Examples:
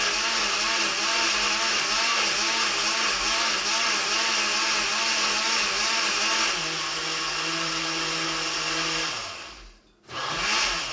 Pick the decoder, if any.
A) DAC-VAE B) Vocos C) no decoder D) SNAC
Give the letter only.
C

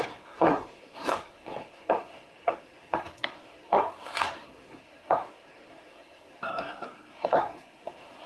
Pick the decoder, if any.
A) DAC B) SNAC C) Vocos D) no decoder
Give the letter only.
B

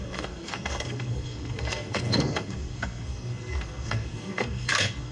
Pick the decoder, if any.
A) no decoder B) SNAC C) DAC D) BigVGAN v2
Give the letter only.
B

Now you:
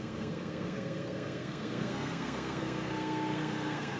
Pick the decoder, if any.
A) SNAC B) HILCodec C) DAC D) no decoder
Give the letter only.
A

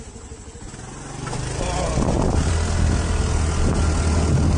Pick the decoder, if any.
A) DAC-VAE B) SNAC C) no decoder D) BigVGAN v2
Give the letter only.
C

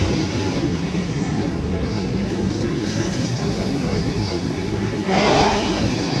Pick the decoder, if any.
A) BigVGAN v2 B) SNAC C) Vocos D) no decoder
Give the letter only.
B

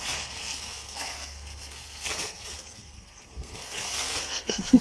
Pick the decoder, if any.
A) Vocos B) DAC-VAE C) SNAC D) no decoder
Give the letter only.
C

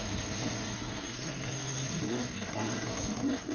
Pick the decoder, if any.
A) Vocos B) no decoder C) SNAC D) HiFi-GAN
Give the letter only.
C